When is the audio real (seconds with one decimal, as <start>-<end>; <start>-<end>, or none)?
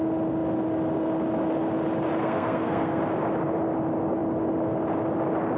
0.0-2.2; 3.0-5.6